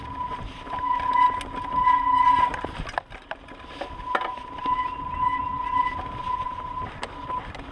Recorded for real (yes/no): yes